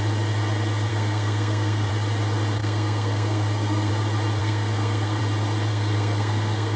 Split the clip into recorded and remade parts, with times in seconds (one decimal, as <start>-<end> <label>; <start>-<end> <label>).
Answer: 0.0-0.9 recorded; 0.9-1.9 remade; 1.9-2.6 recorded; 2.6-3.9 remade; 3.9-4.4 recorded; 4.4-5.2 remade; 5.2-5.7 recorded; 5.7-6.8 remade